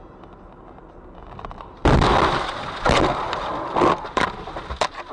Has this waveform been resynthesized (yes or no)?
no